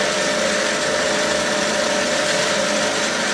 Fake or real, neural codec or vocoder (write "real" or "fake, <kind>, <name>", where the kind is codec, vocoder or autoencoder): fake, vocoder, BigVGAN v2